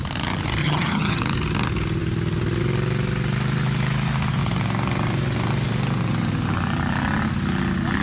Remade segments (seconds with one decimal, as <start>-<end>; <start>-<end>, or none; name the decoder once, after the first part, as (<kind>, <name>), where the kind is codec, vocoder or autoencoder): 0.6-1.2 (vocoder, HiFi-GAN)